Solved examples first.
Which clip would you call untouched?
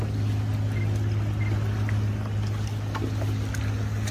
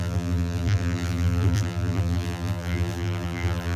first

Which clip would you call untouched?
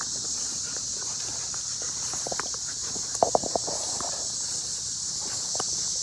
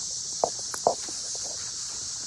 second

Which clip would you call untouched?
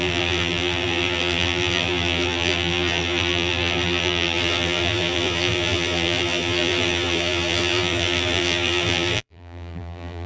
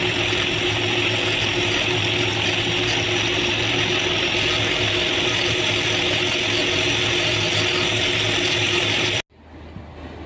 second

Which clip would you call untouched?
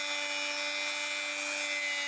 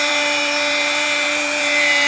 first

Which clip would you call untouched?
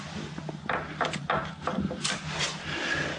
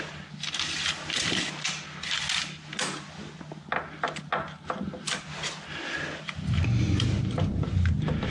second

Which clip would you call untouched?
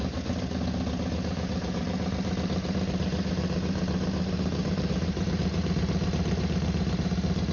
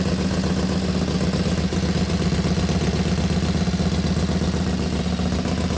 second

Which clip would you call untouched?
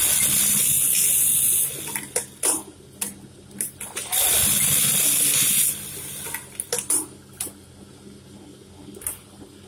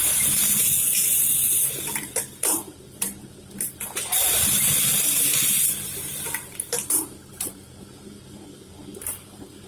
first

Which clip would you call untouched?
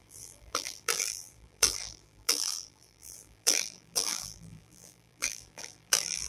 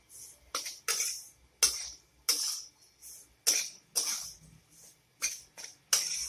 second